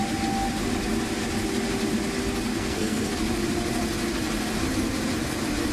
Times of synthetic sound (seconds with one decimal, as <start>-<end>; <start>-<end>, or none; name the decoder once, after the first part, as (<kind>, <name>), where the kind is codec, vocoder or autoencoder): 2.5-3.1 (codec, SNAC)

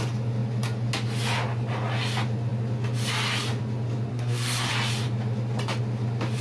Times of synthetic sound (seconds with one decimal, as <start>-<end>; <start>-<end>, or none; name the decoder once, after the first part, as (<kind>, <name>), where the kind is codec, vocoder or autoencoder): 4.1-4.7 (codec, SNAC)

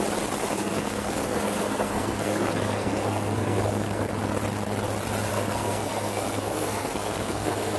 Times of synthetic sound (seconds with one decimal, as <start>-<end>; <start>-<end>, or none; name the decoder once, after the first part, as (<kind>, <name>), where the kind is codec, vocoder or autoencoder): 0.5-4.1 (codec, SNAC); 5.3-7.8

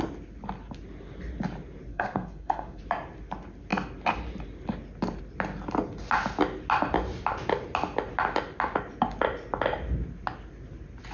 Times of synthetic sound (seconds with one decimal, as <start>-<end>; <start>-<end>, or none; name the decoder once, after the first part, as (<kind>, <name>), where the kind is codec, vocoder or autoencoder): 1.9-2.8 (codec, SNAC)

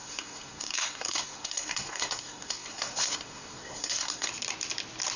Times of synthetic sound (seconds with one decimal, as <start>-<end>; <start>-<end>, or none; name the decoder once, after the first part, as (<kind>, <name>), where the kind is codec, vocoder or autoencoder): 0.0-4.3 (codec, SNAC)

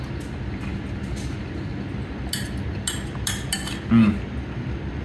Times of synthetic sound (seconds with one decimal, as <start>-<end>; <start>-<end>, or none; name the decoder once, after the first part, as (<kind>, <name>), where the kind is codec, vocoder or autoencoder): none

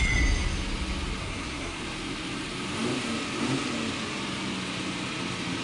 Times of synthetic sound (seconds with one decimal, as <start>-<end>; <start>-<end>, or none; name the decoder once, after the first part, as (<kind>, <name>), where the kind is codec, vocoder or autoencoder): 1.2-1.8 (codec, SNAC)

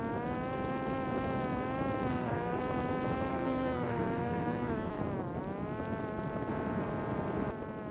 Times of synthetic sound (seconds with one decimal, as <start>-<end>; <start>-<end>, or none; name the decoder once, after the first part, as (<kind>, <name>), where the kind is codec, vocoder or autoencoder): 2.1-2.6 (codec, SNAC); 3.3-5.0